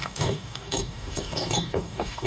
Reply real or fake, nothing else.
fake